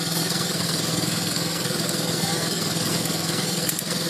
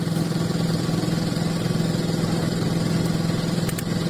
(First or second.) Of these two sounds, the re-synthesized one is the first